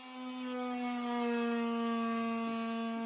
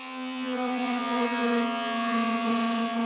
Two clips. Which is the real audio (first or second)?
first